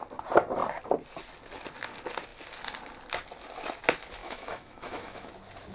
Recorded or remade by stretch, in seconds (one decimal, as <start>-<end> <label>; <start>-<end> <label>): 0.0-4.2 recorded; 4.2-5.3 remade; 5.3-5.7 recorded